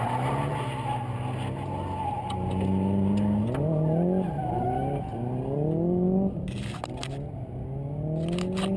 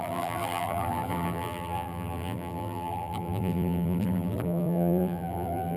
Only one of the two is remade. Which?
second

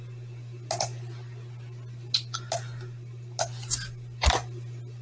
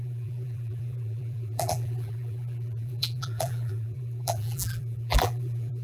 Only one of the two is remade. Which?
second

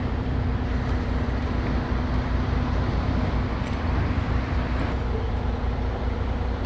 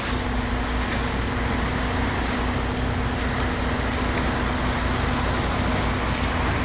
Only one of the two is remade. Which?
first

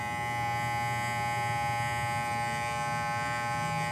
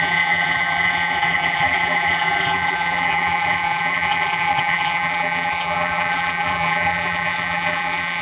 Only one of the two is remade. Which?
second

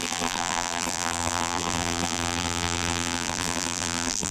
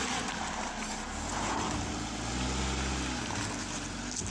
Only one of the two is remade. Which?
first